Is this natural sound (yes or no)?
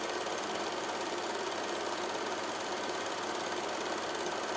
no